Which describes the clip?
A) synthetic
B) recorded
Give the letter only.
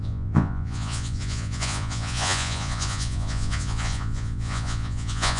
A